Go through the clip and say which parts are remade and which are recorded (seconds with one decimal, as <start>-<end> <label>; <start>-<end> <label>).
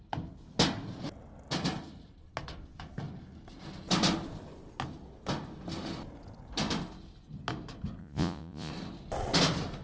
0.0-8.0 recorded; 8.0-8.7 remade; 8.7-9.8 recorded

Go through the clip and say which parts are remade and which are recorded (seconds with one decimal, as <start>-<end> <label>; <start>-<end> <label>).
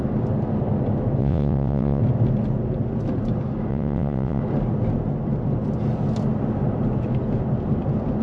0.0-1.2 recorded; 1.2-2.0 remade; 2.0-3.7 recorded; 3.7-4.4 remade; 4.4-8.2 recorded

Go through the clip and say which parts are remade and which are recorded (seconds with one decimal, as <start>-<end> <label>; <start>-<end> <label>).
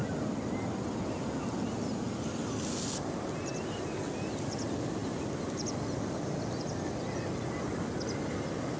0.0-8.8 recorded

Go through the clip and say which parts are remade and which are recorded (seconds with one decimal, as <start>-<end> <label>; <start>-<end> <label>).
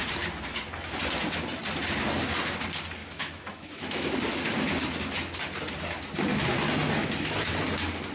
0.0-3.0 recorded; 3.0-4.1 remade; 4.1-7.0 recorded; 7.0-7.6 remade; 7.6-8.1 recorded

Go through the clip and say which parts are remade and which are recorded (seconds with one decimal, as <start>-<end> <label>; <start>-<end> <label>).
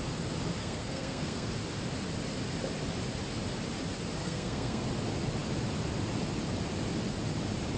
0.0-0.6 recorded; 0.6-1.5 remade; 1.5-4.2 recorded; 4.2-4.8 remade; 4.8-7.8 recorded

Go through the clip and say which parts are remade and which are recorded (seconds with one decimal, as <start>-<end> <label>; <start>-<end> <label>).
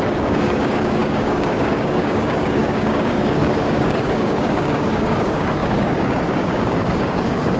0.0-7.6 remade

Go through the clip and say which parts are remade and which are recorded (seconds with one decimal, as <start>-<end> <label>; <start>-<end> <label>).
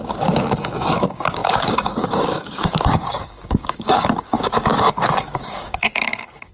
0.0-6.5 remade